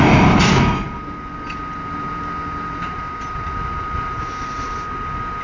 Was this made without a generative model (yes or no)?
yes